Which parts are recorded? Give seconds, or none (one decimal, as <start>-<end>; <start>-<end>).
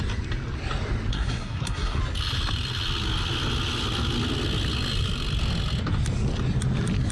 0.0-1.1; 2.0-7.1